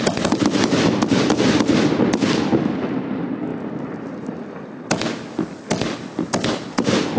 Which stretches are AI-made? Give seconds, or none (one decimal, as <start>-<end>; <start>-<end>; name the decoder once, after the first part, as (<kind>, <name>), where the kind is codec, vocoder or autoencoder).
none